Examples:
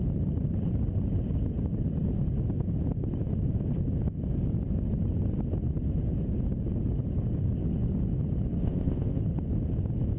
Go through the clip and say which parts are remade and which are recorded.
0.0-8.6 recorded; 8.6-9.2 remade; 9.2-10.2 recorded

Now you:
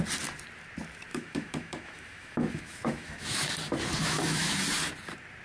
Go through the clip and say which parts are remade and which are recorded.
0.0-1.1 recorded; 1.1-3.5 remade; 3.5-4.0 recorded; 4.0-4.5 remade; 4.5-5.4 recorded

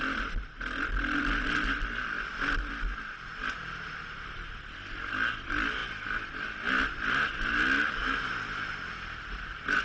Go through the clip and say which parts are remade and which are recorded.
0.0-9.8 recorded

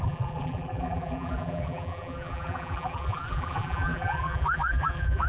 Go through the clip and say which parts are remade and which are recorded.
0.0-5.3 remade

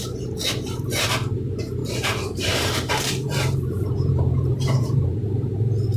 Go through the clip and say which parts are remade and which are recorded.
0.0-0.8 recorded; 0.8-6.0 remade

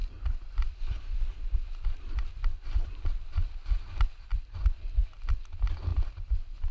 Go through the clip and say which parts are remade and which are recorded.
0.0-4.0 remade; 4.0-5.9 recorded; 5.9-6.7 remade

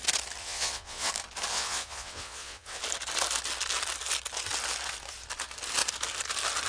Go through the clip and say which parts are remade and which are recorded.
0.0-0.4 recorded; 0.4-1.1 remade; 1.1-1.5 recorded; 1.5-2.8 remade; 2.8-6.7 recorded

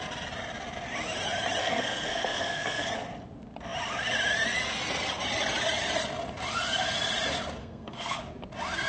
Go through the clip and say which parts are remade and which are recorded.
0.0-1.6 recorded; 1.6-2.9 remade; 2.9-7.6 recorded; 7.6-8.2 remade; 8.2-8.9 recorded